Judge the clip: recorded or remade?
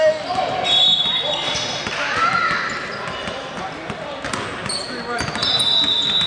recorded